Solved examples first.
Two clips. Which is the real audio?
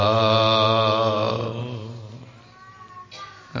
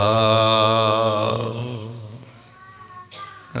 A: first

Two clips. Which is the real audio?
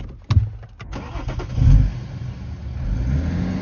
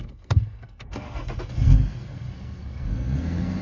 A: first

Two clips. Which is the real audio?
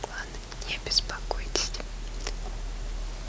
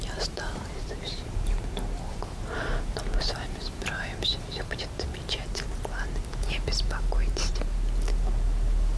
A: first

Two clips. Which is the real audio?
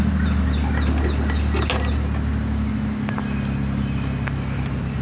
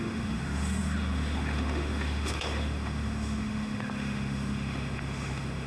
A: first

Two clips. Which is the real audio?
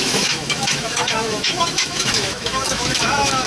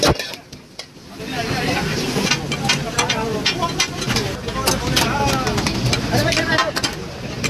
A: second